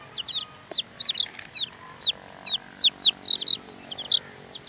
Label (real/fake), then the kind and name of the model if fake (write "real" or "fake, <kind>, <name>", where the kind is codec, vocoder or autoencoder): real